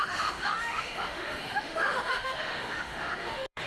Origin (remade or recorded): remade